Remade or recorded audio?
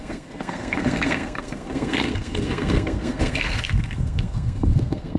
remade